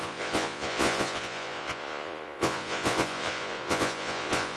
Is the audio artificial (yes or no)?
yes